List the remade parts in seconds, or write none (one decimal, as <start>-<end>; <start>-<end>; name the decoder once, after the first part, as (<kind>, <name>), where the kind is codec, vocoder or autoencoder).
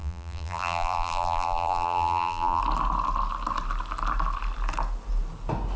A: 0.0-2.6 (vocoder, BigVGAN v2)